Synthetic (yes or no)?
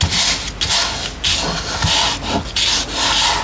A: no